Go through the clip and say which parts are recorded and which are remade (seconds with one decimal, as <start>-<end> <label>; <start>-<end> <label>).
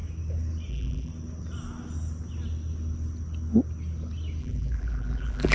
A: 0.0-0.7 recorded; 0.7-1.1 remade; 1.1-4.4 recorded; 4.4-5.5 remade